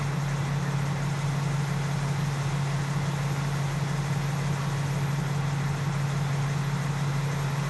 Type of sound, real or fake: real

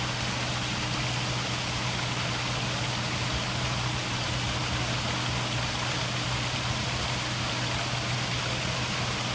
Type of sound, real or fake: real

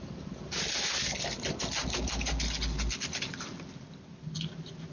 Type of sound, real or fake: real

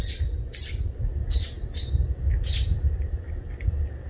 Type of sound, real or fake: real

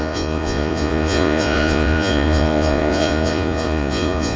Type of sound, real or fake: fake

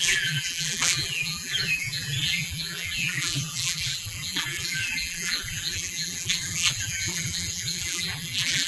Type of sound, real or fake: fake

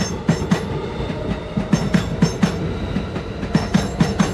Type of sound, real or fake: real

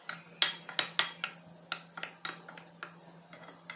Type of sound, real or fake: real